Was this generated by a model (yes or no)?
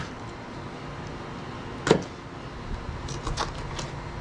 no